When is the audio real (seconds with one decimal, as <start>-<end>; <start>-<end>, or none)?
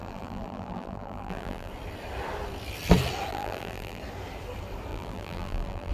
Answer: 1.7-3.3; 4.0-4.9